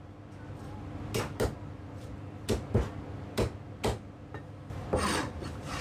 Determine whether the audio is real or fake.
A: real